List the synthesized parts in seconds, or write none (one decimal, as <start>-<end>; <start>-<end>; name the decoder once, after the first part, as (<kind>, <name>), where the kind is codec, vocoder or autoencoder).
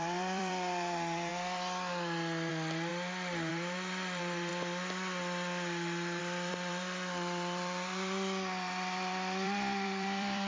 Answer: 0.0-1.3 (vocoder, BigVGAN v2); 2.5-2.9; 3.5-4.5; 6.2-10.5